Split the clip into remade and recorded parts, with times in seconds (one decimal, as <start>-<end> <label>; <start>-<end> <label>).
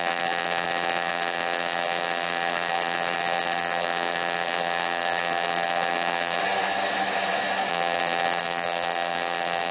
0.0-6.4 remade; 6.4-7.7 recorded; 7.7-9.7 remade